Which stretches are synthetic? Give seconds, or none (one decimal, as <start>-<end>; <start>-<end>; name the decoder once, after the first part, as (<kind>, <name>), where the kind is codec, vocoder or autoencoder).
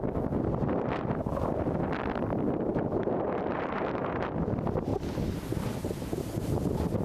2.7-4.2 (vocoder, BigVGAN v2)